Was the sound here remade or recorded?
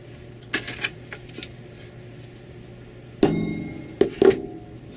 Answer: recorded